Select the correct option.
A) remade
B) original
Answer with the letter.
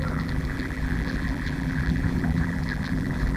A